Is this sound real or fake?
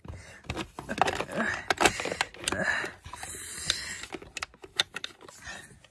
real